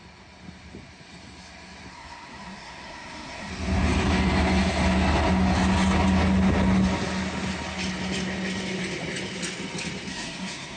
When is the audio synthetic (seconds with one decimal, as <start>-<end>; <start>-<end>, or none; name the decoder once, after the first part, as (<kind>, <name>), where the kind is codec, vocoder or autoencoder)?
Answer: 1.9-3.5 (codec, SNAC); 10.1-10.8